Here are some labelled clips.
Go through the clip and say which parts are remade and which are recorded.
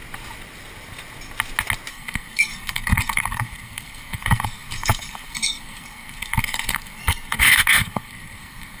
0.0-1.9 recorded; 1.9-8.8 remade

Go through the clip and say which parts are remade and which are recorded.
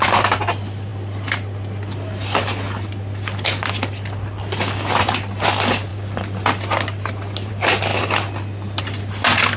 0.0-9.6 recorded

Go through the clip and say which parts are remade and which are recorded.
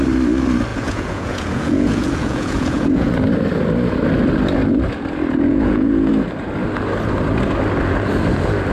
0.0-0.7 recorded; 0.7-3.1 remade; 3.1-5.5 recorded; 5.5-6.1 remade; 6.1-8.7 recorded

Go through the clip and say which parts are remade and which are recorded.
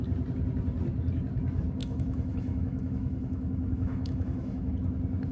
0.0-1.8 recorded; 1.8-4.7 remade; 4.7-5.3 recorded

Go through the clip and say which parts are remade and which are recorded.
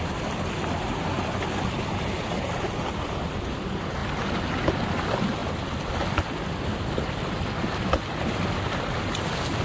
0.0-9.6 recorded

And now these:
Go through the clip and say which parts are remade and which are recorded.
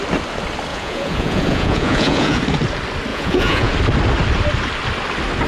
0.0-0.7 recorded; 0.7-2.4 remade; 2.4-3.1 recorded; 3.1-3.7 remade; 3.7-5.5 recorded